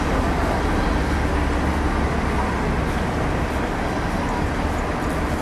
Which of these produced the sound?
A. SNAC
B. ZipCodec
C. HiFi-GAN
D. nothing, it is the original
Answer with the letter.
D